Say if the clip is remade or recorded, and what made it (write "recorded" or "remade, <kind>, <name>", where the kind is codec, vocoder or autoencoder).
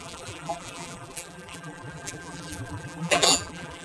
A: remade, vocoder, BigVGAN v2